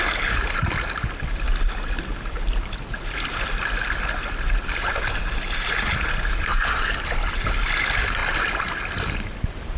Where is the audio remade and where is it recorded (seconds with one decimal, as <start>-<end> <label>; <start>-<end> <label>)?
0.0-9.8 recorded